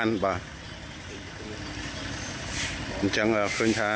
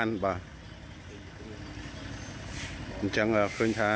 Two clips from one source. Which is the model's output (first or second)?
first